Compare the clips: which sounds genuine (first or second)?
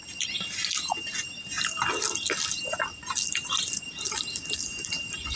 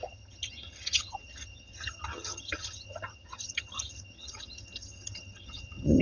first